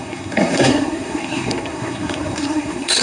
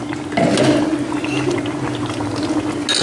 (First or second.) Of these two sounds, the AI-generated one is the first